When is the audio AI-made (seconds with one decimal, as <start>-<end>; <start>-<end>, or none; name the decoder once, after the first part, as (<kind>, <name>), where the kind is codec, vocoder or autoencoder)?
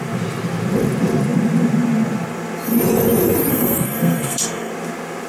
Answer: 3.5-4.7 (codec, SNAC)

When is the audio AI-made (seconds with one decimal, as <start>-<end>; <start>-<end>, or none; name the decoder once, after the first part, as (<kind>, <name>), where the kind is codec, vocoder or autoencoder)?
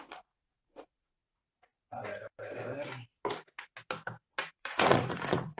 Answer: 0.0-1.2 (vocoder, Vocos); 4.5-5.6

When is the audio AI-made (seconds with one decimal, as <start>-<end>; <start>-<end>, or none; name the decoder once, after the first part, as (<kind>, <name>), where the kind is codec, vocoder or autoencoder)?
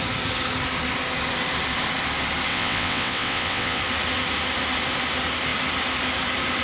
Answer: 2.5-3.8 (vocoder, WaveNeXt)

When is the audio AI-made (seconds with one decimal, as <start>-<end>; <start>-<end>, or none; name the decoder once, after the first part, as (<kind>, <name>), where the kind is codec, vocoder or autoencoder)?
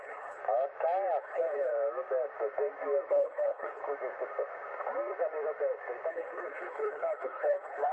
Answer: 0.0-0.4 (codec, HILCodec); 1.2-1.7; 3.1-3.8; 6.1-7.9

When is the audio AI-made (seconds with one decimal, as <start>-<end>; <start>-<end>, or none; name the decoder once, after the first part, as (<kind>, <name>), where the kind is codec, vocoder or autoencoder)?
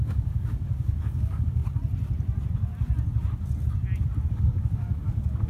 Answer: 0.0-1.6 (codec, DAC); 4.3-5.5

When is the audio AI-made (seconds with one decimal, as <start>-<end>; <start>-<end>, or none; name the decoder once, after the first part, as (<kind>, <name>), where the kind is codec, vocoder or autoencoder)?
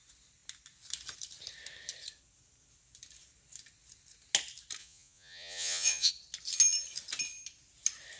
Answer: 4.8-6.1 (vocoder, Vocos)